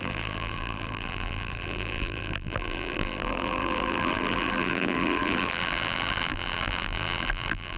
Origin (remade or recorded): remade